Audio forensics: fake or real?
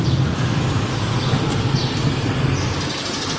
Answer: real